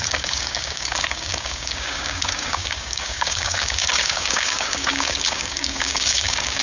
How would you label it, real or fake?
fake